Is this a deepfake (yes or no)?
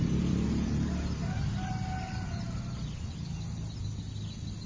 no